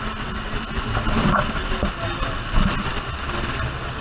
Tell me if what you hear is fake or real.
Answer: real